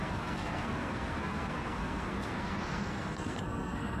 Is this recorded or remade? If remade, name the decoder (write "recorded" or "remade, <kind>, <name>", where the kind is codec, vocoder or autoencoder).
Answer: remade, codec, SNAC